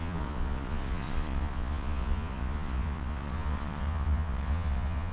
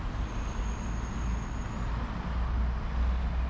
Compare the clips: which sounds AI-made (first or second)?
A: first